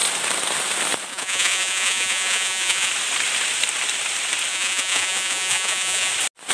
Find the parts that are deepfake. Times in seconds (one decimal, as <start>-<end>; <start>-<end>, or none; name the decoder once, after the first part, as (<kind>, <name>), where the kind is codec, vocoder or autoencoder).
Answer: 1.1-2.9 (vocoder, Vocos); 4.5-6.1